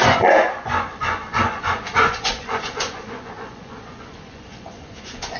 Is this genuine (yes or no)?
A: no